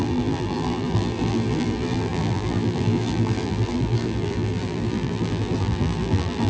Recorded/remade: remade